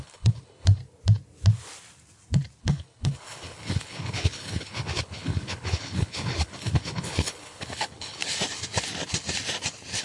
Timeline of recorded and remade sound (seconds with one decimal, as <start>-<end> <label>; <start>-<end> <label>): 0.0-0.8 remade; 0.8-2.6 recorded; 2.6-8.2 remade; 8.2-10.0 recorded